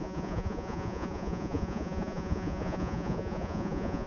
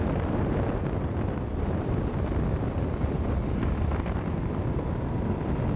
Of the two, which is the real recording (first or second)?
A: second